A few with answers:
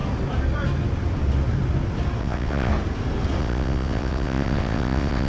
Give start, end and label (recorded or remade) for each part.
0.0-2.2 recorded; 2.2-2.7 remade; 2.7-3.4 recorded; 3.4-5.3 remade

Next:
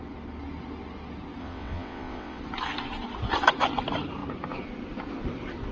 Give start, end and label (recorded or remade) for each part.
0.0-1.4 recorded; 1.4-2.4 remade; 2.4-5.7 recorded

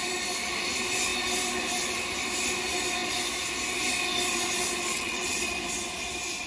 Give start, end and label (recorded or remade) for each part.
0.0-4.8 recorded; 4.8-5.4 remade; 5.4-6.5 recorded

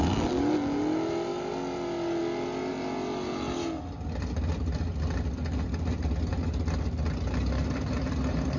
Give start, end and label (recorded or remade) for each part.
0.0-8.6 recorded

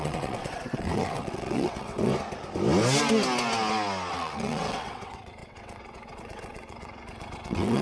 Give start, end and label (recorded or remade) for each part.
0.0-2.1 remade; 2.1-4.1 recorded; 4.1-7.8 remade

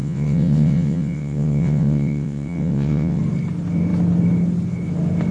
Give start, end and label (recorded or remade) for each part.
0.0-3.2 remade; 3.2-5.3 recorded

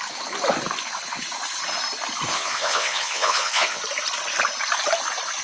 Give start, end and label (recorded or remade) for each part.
0.0-2.3 recorded; 2.3-3.8 remade; 3.8-5.4 recorded

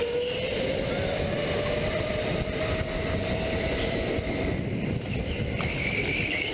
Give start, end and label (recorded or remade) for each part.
0.0-6.5 recorded